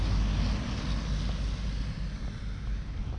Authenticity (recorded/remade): recorded